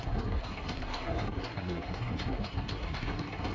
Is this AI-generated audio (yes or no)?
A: yes